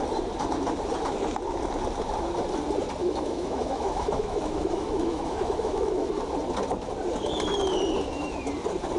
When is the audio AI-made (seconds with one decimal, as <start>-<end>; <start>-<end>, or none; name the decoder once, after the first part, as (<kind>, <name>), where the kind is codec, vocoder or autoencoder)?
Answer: 3.0-6.1 (autoencoder, DAC-VAE)